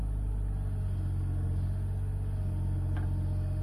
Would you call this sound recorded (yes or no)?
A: yes